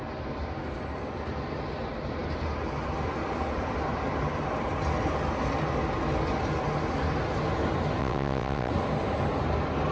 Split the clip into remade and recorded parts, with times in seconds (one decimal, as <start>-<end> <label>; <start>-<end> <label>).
0.0-8.0 recorded; 8.0-8.7 remade; 8.7-9.9 recorded